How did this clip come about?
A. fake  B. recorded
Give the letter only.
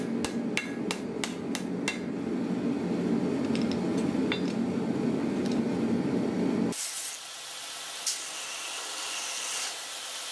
B